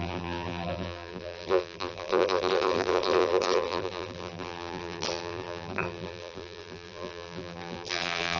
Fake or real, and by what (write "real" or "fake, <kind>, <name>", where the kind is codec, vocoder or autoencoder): fake, vocoder, BigVGAN v2